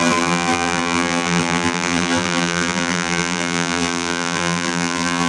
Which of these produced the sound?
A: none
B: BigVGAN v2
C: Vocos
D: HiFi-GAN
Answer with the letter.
B